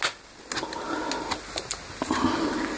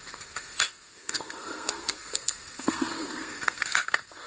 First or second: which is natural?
first